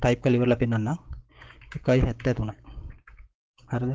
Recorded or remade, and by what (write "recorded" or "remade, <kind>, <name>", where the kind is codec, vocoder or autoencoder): remade, codec, DAC